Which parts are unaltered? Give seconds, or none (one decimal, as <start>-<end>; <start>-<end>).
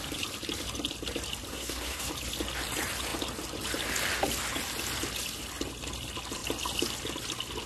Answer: 0.0-1.5; 2.1-7.7